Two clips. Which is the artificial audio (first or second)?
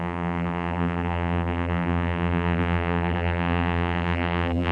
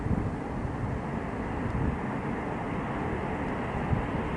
first